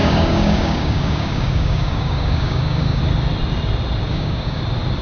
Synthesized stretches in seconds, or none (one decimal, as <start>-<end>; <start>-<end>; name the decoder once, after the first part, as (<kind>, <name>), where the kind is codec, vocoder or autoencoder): 0.0-3.0 (codec, DAC); 4.1-4.6